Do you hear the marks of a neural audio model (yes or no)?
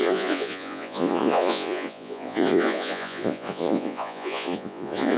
yes